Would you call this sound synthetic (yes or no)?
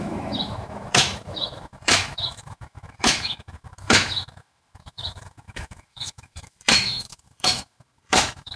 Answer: yes